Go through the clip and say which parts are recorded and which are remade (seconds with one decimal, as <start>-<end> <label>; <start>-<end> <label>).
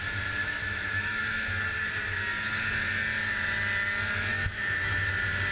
0.0-0.4 recorded; 0.4-1.5 remade; 1.5-4.3 recorded; 4.3-5.1 remade; 5.1-5.5 recorded